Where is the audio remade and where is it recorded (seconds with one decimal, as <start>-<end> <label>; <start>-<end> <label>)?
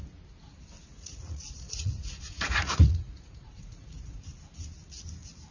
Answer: 0.0-0.9 recorded; 0.9-4.2 remade; 4.2-5.5 recorded